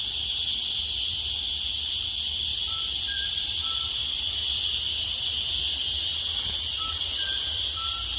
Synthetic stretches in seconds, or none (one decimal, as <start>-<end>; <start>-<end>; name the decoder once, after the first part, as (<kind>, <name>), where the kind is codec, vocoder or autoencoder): 2.5-4.3 (vocoder, BigVGAN v2)

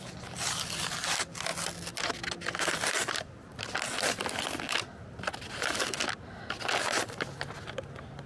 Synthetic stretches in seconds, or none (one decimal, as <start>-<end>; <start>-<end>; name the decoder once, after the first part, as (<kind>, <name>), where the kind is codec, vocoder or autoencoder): none

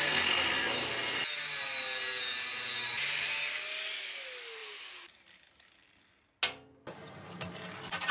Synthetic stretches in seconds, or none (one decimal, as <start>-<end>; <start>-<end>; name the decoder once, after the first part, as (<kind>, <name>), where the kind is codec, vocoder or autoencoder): none